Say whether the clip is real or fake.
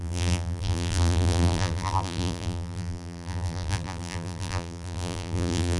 fake